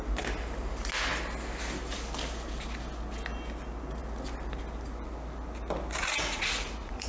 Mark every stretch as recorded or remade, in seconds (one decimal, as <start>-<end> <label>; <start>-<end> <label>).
0.0-6.0 recorded; 6.0-7.1 remade